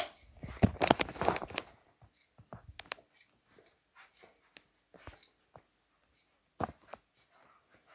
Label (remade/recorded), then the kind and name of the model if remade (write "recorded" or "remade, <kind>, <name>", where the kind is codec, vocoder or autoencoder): recorded